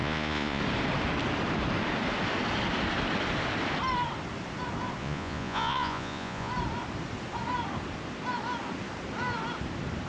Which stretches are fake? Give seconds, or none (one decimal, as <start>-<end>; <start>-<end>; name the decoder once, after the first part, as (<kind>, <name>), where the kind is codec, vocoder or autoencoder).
0.0-0.6 (vocoder, Vocos); 5.0-6.5